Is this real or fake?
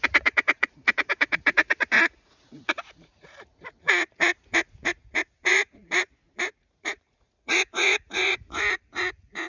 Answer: fake